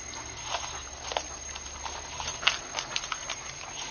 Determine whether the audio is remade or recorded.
recorded